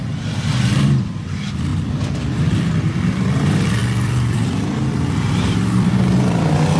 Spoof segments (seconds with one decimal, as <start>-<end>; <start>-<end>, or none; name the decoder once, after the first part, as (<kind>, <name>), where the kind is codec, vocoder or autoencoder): 0.0-1.7 (vocoder, BigVGAN v2); 2.8-6.8